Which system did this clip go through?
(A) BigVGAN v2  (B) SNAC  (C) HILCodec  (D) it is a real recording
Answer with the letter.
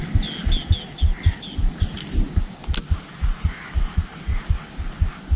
D